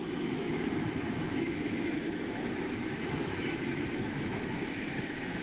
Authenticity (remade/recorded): remade